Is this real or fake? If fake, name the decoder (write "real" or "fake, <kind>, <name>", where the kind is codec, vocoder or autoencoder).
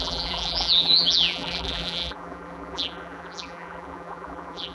fake, vocoder, BigVGAN v2